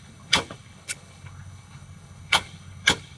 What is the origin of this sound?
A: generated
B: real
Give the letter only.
A